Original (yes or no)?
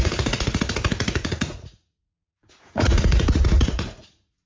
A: no